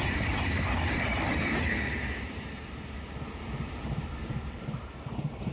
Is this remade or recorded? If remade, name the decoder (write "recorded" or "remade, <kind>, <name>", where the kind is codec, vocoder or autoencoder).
remade, vocoder, BigVGAN v2